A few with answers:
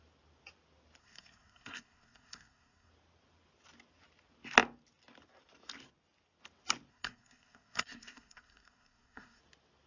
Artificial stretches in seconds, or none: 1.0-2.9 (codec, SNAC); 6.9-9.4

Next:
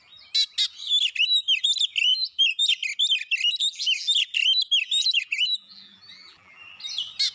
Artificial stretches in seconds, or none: 2.1-2.7 (vocoder, BigVGAN v2); 3.6-4.2; 5.0-6.7